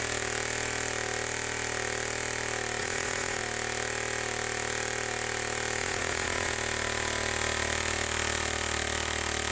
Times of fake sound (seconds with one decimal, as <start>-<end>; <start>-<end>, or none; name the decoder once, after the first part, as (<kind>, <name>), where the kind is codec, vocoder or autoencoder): 2.8-3.4 (vocoder, Vocos); 5.8-6.5